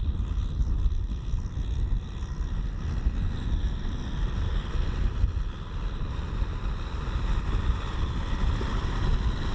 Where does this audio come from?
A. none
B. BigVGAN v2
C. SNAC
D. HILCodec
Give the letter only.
A